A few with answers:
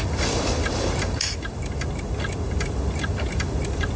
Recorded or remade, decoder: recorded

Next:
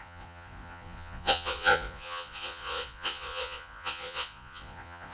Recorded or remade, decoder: remade, vocoder, Vocos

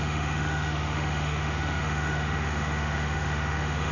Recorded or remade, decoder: remade, autoencoder, DAC-VAE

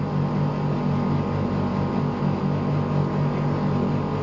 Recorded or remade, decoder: recorded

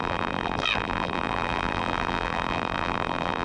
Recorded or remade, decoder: remade, vocoder, BigVGAN v2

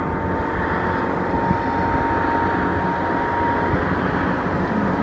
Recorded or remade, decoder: recorded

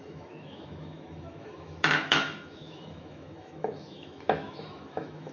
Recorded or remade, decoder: remade, autoencoder, DAC-VAE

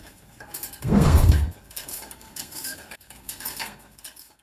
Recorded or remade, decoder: remade, codec, SNAC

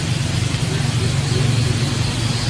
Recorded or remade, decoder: recorded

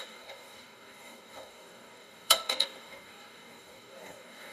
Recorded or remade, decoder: remade, codec, DAC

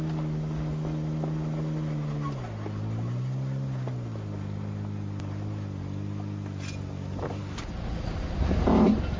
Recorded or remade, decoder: recorded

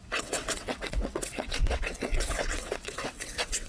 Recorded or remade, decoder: remade, vocoder, WaveNeXt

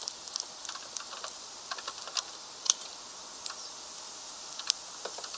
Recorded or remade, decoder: recorded